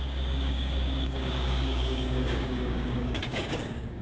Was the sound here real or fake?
fake